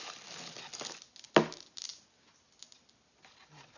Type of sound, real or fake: real